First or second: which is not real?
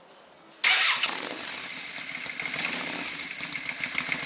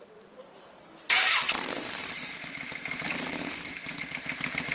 second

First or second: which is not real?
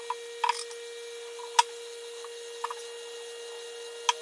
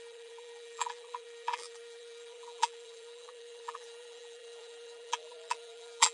second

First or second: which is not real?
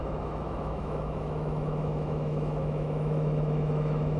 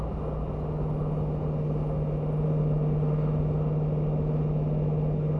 first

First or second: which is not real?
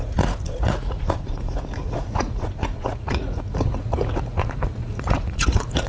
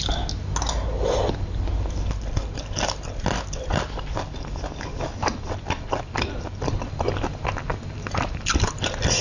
first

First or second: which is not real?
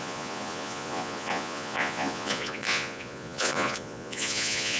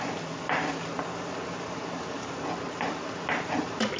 first